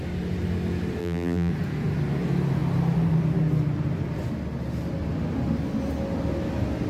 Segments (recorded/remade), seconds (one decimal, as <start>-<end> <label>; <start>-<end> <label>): 0.0-1.0 recorded; 1.0-1.5 remade; 1.5-6.9 recorded